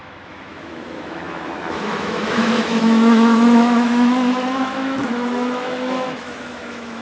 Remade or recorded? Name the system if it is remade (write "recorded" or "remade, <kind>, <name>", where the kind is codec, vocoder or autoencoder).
remade, autoencoder, DAC-VAE